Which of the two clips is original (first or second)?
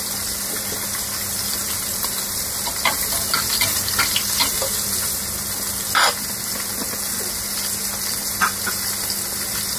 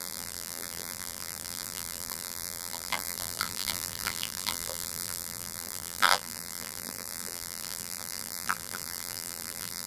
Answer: first